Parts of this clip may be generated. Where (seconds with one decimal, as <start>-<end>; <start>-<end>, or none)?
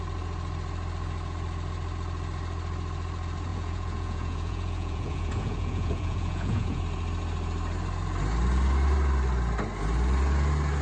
3.5-6.8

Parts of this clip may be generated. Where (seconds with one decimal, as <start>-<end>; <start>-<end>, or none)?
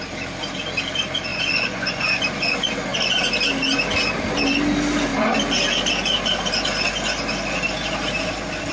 1.3-2.2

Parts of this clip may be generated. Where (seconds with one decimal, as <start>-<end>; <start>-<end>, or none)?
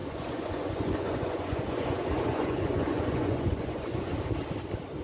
0.0-4.1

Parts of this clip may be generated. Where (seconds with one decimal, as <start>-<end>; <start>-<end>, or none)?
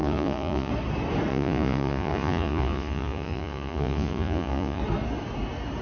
0.0-0.7; 1.3-4.8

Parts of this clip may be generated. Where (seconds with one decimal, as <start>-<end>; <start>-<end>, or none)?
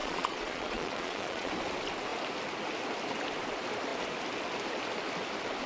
0.0-1.5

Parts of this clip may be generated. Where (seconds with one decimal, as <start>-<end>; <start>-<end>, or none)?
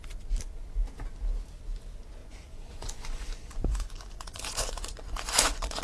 2.2-5.8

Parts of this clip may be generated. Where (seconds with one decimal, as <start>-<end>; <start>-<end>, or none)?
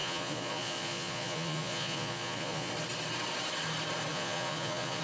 0.0-2.7; 4.1-5.0